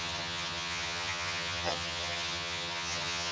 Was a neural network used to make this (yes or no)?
yes